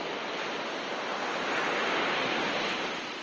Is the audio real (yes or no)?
yes